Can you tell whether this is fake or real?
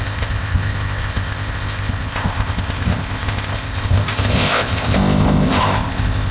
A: fake